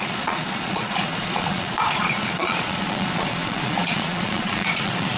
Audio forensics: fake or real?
fake